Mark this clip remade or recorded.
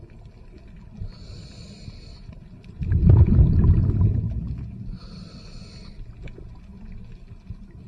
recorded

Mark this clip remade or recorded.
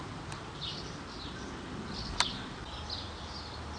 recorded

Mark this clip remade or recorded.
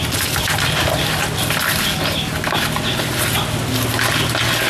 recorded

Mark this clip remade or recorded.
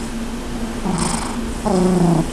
recorded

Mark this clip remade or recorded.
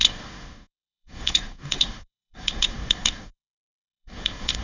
remade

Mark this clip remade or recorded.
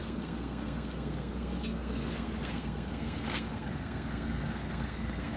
remade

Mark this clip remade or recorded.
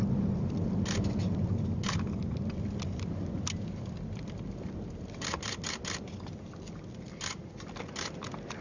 recorded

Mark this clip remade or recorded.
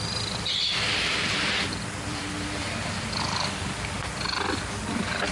recorded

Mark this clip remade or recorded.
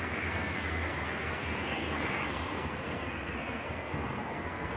remade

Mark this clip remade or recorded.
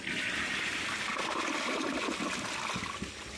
recorded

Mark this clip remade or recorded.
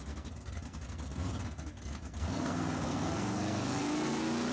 remade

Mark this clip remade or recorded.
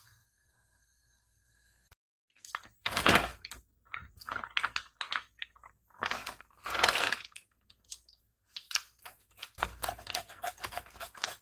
remade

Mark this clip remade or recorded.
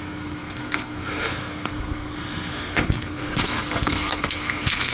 remade